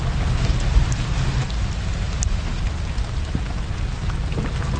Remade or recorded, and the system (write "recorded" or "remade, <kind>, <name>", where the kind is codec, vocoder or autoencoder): recorded